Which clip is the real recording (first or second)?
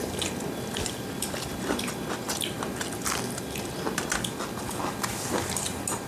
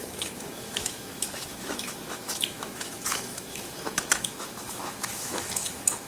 first